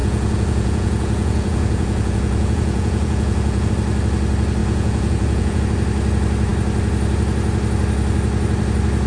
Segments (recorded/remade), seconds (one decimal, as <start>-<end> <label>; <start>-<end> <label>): 0.0-3.7 remade; 3.7-4.6 recorded; 4.6-5.6 remade; 5.6-9.1 recorded